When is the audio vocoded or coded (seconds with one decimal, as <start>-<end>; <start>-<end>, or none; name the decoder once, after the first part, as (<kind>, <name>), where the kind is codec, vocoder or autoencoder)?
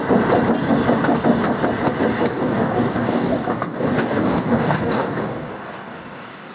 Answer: 2.3-6.5 (codec, DAC)